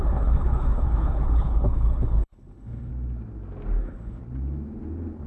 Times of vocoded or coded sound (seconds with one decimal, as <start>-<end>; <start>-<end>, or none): 0.0-2.9; 3.8-4.2